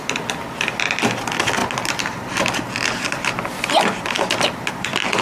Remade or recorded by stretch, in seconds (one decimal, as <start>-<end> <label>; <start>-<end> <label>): 0.0-5.2 recorded